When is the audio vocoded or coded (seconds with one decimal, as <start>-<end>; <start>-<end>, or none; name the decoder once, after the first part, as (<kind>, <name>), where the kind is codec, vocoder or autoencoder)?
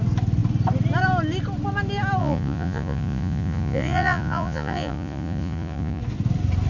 2.2-6.0 (vocoder, Vocos)